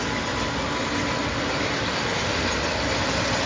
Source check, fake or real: real